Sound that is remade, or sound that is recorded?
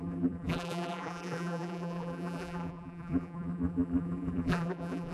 remade